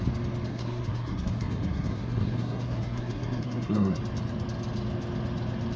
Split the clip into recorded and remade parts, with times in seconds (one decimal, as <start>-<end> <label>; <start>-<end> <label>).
0.0-0.5 recorded; 0.5-4.0 remade; 4.0-5.8 recorded